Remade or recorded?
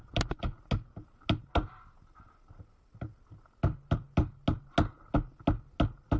recorded